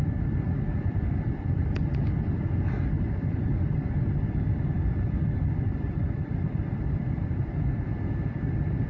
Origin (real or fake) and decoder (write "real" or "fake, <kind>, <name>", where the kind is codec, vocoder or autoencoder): real